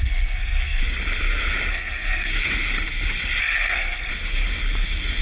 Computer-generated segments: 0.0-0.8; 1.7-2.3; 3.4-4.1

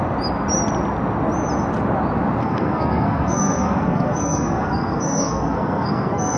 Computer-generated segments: 2.4-6.4

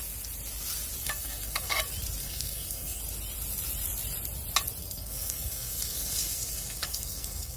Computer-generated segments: 1.0-1.8; 2.2-3.0; 4.8-7.6

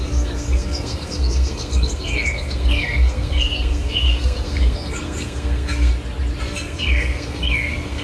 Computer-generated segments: 0.0-5.9; 6.4-8.0